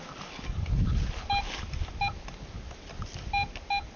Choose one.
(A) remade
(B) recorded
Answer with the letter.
B